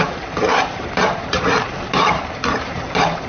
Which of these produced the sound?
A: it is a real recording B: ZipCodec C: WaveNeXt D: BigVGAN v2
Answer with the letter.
D